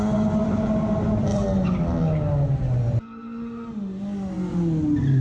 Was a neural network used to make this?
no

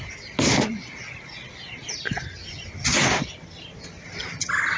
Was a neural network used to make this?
no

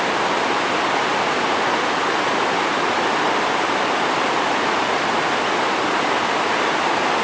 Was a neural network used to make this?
no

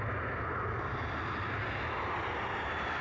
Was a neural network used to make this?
no